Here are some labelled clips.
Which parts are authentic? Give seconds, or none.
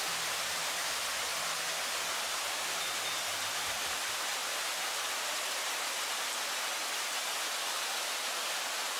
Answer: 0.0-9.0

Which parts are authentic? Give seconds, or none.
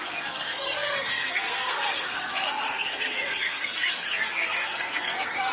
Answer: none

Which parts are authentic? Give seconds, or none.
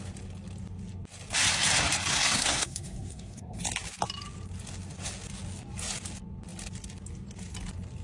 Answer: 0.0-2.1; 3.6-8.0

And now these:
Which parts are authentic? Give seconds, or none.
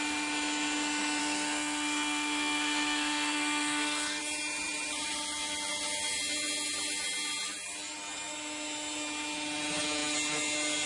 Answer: 0.0-1.2; 4.2-10.9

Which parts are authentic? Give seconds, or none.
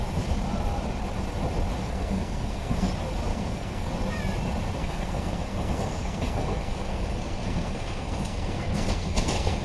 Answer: 0.0-1.8; 2.9-3.3; 3.9-4.8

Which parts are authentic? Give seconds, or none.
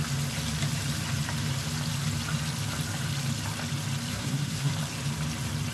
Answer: 0.0-4.1; 4.7-5.7